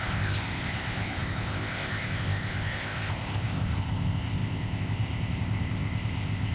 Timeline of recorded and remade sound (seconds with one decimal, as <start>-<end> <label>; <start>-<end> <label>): 0.0-6.5 remade